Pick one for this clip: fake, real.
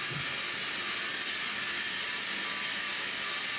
real